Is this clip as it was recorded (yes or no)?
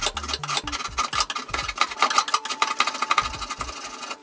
yes